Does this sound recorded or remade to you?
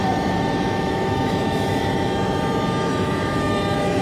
remade